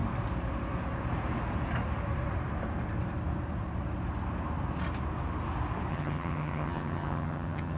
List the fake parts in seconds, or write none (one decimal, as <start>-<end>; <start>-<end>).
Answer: 5.9-7.8